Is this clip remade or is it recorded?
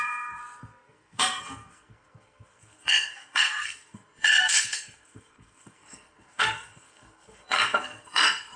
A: remade